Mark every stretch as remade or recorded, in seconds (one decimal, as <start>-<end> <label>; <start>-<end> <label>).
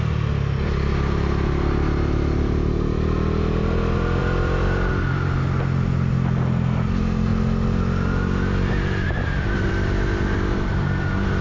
0.0-4.2 recorded; 4.2-4.9 remade; 4.9-7.3 recorded; 7.3-9.7 remade; 9.7-11.4 recorded